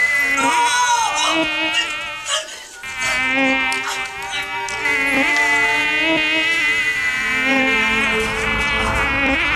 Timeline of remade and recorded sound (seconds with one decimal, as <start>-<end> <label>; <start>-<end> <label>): 0.0-7.5 recorded; 7.5-8.6 remade; 8.6-9.6 recorded